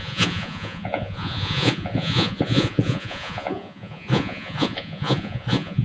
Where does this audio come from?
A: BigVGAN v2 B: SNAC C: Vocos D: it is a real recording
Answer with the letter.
C